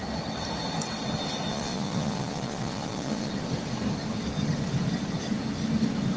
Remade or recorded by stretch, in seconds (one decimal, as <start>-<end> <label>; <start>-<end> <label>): 0.0-1.5 recorded; 1.5-3.3 remade; 3.3-6.2 recorded